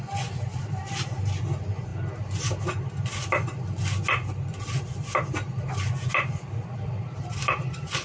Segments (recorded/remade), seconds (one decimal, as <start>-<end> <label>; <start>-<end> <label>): 0.0-0.5 recorded; 0.5-1.3 remade; 1.3-8.0 recorded